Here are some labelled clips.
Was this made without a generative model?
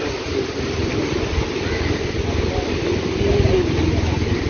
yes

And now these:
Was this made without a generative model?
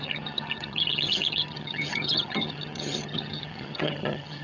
no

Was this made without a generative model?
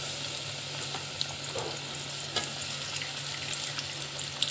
yes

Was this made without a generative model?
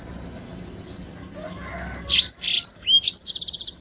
yes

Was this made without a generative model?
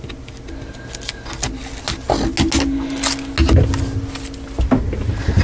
yes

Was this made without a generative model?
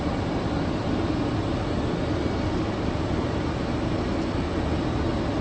yes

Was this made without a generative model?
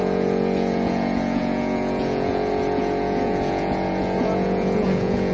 no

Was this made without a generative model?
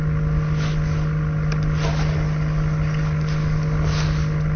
yes